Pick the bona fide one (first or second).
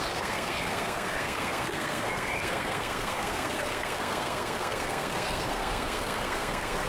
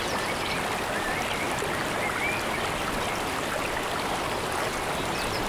second